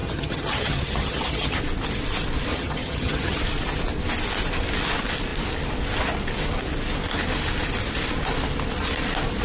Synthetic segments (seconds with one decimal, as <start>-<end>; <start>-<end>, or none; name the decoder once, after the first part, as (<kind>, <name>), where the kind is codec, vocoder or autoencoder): 0.0-1.6 (vocoder, HiFi-GAN); 2.5-3.4